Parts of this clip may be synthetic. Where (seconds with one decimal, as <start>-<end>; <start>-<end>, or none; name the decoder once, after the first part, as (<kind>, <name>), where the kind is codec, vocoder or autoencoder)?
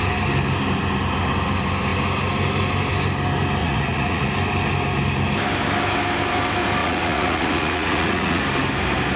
3.6-4.3 (vocoder, Vocos); 6.8-8.4